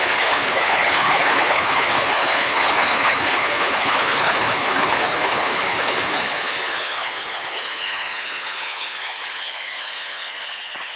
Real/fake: fake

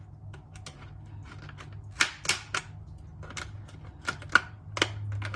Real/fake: real